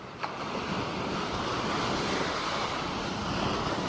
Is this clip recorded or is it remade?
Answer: recorded